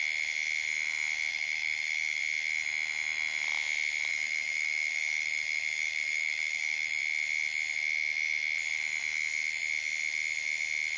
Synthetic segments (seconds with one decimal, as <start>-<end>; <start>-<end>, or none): 1.3-2.2; 4.1-7.0